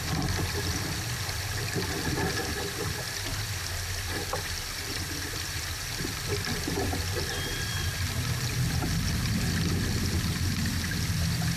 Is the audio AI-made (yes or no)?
no